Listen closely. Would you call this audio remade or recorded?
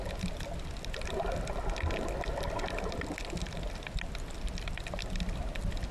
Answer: recorded